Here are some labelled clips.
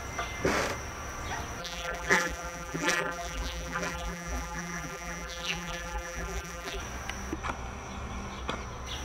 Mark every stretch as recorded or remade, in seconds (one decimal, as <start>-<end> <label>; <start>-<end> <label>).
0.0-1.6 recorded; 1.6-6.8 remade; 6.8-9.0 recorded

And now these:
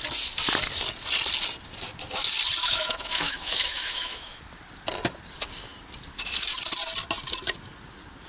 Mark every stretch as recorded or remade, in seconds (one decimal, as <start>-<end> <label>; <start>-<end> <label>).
0.0-2.6 recorded; 2.6-4.4 remade; 4.4-8.3 recorded

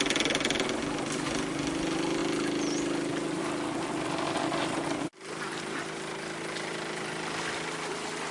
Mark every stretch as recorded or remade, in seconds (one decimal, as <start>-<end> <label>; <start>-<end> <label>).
0.0-8.3 recorded

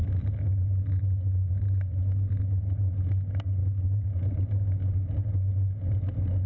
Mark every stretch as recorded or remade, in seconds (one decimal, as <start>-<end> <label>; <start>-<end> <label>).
0.0-3.6 recorded; 3.6-4.6 remade; 4.6-6.5 recorded